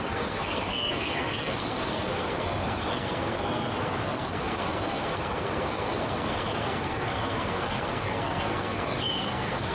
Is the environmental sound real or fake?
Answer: fake